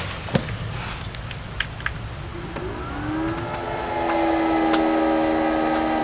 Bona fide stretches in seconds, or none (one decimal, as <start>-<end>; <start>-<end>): 0.0-6.0